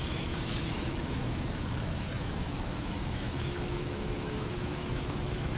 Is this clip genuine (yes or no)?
no